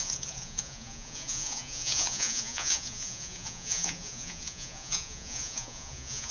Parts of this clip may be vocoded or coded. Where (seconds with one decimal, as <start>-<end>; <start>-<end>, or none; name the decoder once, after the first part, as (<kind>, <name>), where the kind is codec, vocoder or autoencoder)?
0.0-6.3 (vocoder, Vocos)